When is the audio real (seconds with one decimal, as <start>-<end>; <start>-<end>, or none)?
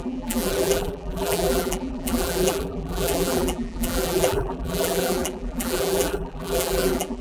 none